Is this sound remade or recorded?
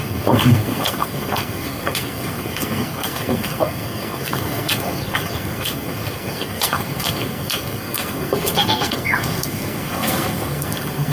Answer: remade